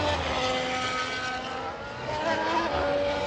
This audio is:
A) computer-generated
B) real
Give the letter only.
B